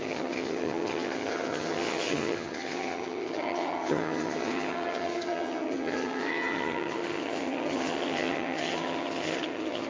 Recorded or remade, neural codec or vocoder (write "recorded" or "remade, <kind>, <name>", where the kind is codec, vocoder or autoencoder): remade, vocoder, HiFi-GAN